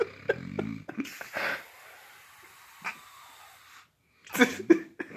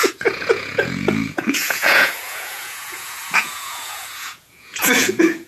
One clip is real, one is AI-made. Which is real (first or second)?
first